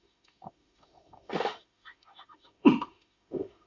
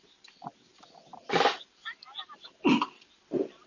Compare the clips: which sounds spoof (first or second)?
first